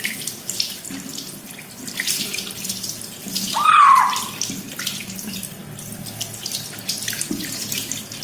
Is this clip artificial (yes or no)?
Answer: no